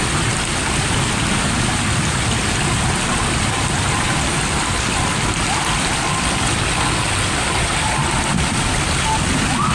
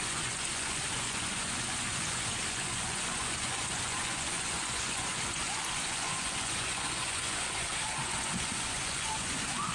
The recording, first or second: first